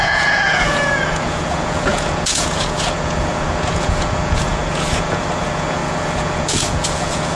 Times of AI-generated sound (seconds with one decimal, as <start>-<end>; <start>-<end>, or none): 0.0-7.4